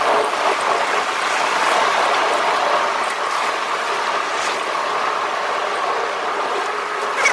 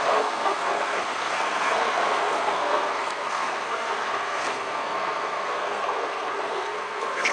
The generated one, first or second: second